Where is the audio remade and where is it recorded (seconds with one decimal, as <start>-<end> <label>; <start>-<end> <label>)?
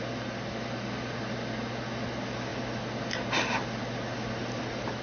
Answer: 0.0-5.0 recorded